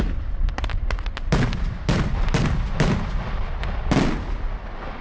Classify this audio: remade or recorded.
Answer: recorded